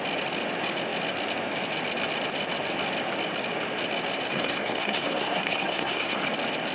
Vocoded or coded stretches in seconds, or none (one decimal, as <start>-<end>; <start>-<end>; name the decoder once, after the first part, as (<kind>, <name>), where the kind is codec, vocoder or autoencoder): 4.3-6.2 (codec, SNAC)